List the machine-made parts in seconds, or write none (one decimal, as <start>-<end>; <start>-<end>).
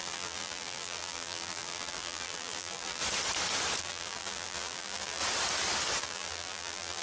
0.0-3.0; 3.8-5.2; 6.0-7.0